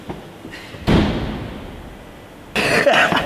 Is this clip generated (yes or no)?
no